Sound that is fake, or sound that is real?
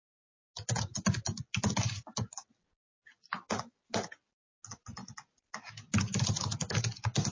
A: real